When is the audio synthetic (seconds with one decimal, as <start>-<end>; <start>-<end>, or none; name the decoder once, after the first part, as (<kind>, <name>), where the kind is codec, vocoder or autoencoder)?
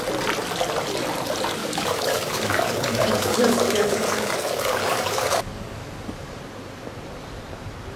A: 1.6-6.4 (codec, DAC)